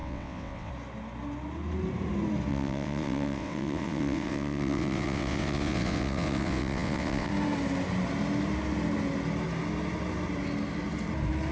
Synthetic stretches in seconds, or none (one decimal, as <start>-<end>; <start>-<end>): 0.0-0.7; 2.5-7.3